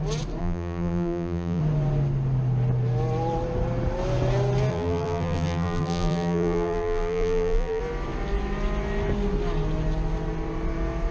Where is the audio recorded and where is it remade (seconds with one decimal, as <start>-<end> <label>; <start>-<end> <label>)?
0.0-0.4 recorded; 0.4-1.6 remade; 1.6-4.7 recorded; 4.7-7.8 remade; 7.8-11.1 recorded